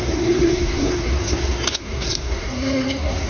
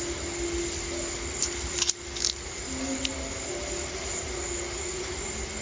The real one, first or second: second